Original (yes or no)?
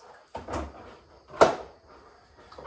yes